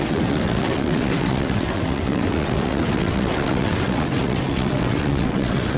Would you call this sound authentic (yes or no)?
no